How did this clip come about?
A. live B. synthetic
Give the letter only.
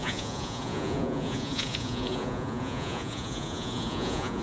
B